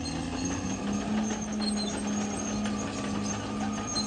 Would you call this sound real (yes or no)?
yes